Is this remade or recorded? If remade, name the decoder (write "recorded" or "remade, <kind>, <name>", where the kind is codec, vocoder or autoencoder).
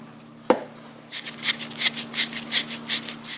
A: recorded